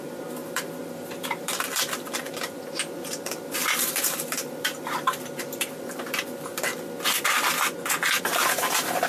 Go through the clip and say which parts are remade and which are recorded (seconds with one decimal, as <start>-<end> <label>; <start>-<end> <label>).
0.0-6.7 remade; 6.7-8.2 recorded; 8.2-9.1 remade